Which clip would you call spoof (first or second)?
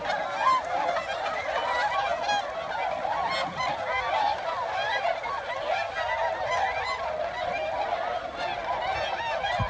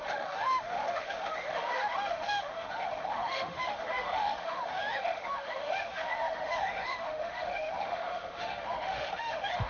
second